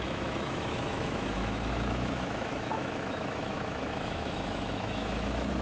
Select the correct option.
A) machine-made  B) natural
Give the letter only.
A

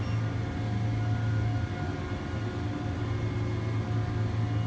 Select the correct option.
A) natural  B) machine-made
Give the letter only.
A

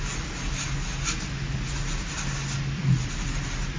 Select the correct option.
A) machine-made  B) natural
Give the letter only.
B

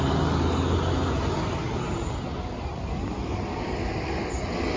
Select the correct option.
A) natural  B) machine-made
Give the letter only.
A